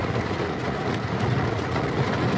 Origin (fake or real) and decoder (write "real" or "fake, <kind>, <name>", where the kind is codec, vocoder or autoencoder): fake, vocoder, Vocos